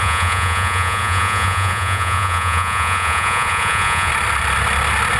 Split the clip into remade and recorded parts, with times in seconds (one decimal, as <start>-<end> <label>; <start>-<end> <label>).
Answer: 0.0-4.1 remade; 4.1-5.2 recorded